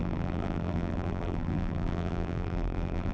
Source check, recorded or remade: remade